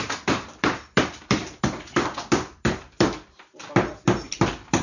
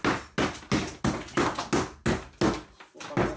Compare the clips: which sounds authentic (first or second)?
second